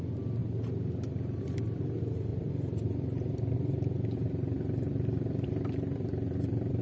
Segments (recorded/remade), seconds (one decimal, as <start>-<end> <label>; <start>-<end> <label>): 0.0-2.3 recorded; 2.3-6.8 remade